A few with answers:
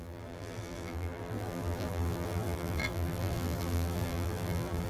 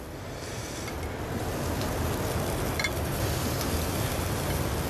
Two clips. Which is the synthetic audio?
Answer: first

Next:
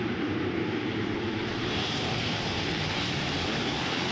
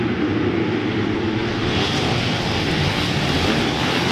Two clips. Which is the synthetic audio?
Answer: first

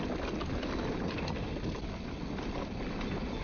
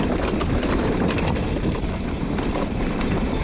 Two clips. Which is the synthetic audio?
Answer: second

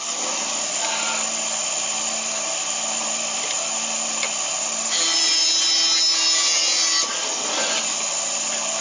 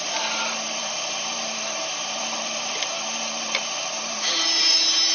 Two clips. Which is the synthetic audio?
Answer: second